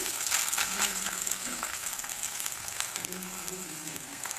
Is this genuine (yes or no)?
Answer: no